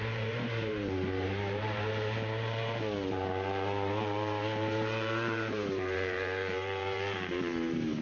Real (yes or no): no